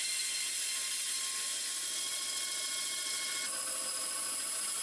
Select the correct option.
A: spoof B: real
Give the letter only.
B